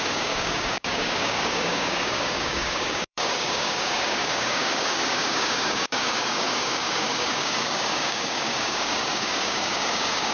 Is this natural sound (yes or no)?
no